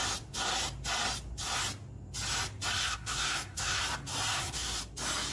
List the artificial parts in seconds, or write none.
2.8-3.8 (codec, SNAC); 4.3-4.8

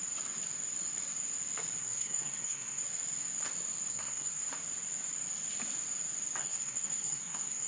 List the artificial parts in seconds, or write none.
1.8-2.8 (codec, SNAC); 3.9-4.4; 6.4-7.7

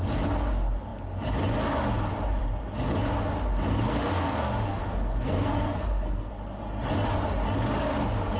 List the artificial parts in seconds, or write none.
3.7-6.3 (codec, SNAC)

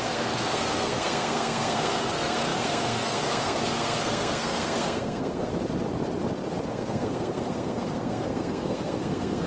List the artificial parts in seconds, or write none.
0.0-5.5 (codec, SNAC); 6.7-9.5

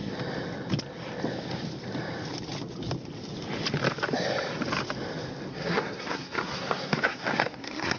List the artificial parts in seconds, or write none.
5.5-8.0 (codec, SNAC)

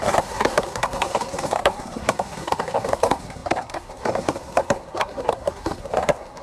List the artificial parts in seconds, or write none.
0.0-6.4 (codec, SNAC)